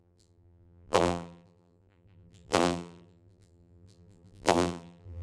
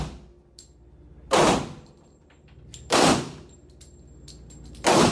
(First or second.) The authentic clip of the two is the second